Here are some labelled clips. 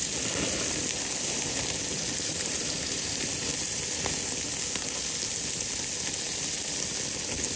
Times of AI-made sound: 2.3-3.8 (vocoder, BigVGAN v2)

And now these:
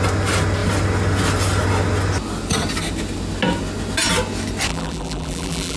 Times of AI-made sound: 4.7-5.8 (vocoder, BigVGAN v2)

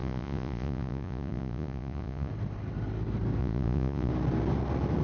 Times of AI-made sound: 0.0-2.3 (vocoder, Vocos); 3.4-4.1

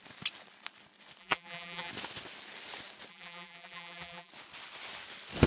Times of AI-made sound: 1.2-1.9 (vocoder, BigVGAN v2); 3.1-4.3